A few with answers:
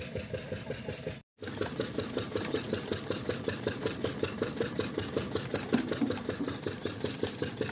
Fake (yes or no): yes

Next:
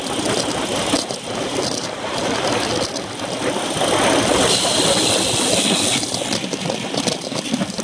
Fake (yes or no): no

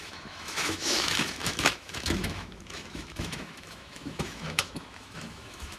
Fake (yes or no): yes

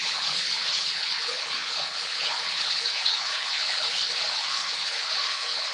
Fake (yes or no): yes